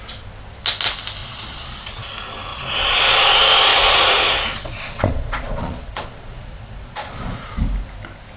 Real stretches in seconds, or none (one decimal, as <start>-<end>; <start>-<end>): 0.0-1.2; 2.1-2.5; 3.0-3.7; 7.6-8.4